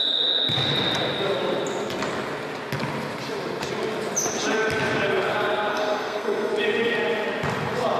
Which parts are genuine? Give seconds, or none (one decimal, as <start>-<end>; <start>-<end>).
0.0-5.7; 6.5-8.0